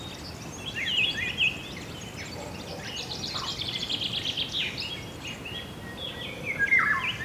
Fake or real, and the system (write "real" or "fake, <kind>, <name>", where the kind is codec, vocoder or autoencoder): real